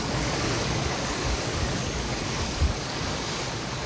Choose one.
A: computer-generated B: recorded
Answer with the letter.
A